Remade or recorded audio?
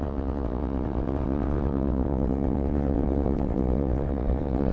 remade